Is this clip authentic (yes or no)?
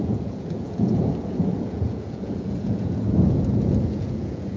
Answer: no